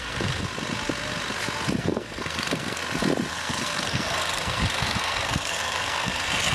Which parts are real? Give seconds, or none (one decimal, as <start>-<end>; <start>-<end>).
0.5-1.8; 2.8-3.3